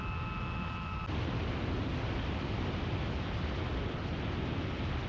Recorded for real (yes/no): yes